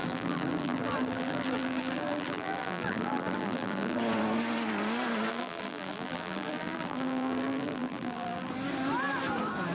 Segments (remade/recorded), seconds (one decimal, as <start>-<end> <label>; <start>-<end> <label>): 0.0-4.0 remade; 4.0-5.3 recorded; 5.3-8.5 remade; 8.5-9.7 recorded